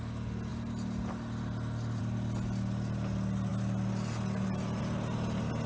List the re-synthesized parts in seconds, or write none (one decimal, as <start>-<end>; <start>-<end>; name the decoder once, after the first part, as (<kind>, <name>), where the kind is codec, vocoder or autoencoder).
none